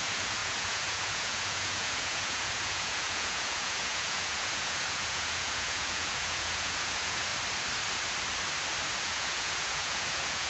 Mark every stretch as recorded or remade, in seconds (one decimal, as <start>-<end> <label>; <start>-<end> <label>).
0.0-7.3 remade; 7.3-9.0 recorded; 9.0-10.5 remade